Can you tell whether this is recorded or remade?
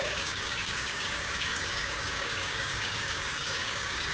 remade